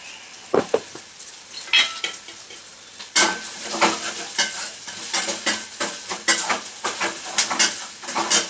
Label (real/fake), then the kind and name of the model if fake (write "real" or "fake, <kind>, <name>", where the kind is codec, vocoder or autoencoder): real